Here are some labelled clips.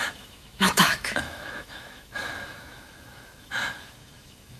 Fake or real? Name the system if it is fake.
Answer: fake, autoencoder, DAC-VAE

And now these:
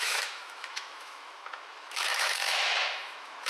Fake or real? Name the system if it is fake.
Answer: fake, autoencoder, DAC-VAE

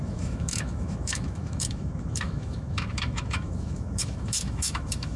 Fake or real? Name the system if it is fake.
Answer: fake, autoencoder, DAC-VAE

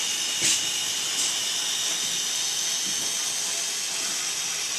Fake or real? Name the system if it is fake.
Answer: real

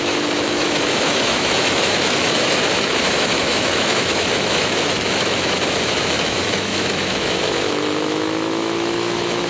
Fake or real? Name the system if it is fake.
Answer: fake, autoencoder, DAC-VAE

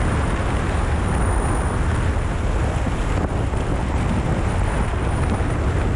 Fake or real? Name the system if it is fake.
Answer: real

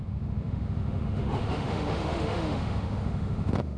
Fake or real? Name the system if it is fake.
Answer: fake, autoencoder, DAC-VAE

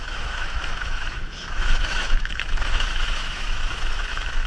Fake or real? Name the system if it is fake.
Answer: fake, autoencoder, DAC-VAE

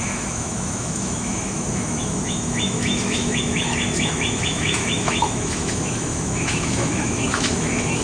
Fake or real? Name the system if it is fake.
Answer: fake, autoencoder, DAC-VAE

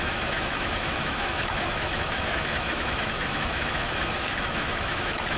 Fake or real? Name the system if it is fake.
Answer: fake, autoencoder, DAC-VAE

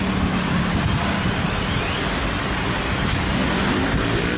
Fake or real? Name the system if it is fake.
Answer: real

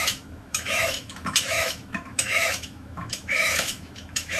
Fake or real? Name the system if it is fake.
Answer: fake, autoencoder, DAC-VAE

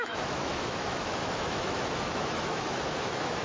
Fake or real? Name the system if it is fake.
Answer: fake, autoencoder, DAC-VAE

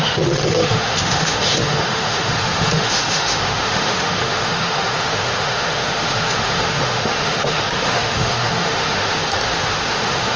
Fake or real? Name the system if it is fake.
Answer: fake, autoencoder, DAC-VAE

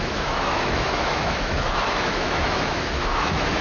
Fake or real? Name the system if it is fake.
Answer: fake, autoencoder, DAC-VAE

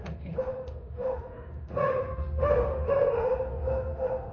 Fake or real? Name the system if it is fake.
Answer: fake, autoencoder, DAC-VAE